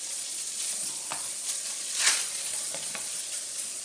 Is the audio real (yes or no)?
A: no